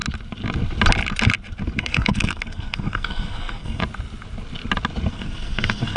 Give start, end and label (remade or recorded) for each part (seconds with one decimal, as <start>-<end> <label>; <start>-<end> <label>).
0.0-1.8 recorded; 1.8-3.8 remade; 3.8-5.1 recorded; 5.1-6.0 remade